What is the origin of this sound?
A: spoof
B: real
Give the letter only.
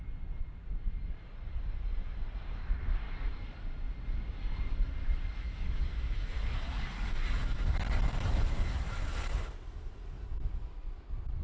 B